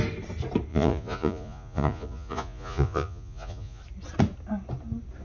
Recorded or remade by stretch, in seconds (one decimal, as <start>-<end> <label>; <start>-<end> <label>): 0.0-0.7 recorded; 0.7-3.8 remade; 3.8-5.2 recorded